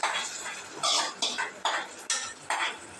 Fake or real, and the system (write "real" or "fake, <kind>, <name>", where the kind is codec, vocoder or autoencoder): real